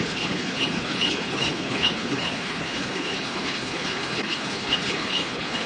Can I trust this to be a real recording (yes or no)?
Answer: no